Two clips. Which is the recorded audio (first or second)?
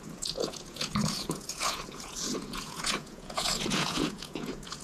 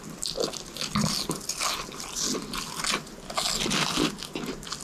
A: second